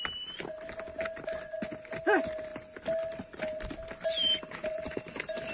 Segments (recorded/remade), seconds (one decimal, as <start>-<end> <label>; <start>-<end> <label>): 0.0-5.5 recorded

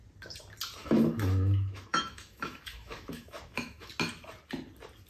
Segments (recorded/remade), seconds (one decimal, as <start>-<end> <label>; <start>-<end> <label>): 0.0-0.8 recorded; 0.8-3.9 remade; 3.9-5.1 recorded

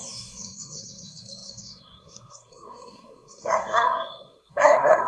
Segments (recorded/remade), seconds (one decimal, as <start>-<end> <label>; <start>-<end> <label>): 0.0-5.1 remade

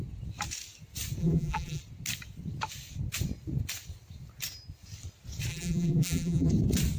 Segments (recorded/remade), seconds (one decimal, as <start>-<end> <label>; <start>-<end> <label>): 0.0-1.2 recorded; 1.2-1.8 remade; 1.8-5.5 recorded; 5.5-6.5 remade; 6.5-7.0 recorded

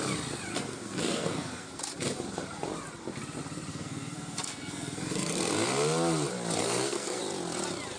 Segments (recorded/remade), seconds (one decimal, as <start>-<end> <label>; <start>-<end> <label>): 0.0-0.5 recorded; 0.5-1.8 remade; 1.8-3.7 recorded; 3.7-5.5 remade; 5.5-6.6 recorded; 6.6-7.2 remade; 7.2-8.0 recorded

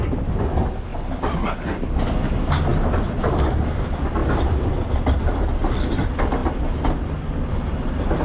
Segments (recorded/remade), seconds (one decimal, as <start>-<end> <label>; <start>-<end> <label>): 0.0-8.2 recorded